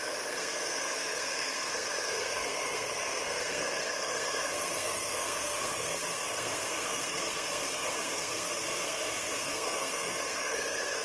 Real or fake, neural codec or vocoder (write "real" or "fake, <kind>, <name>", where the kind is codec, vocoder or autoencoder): fake, codec, SNAC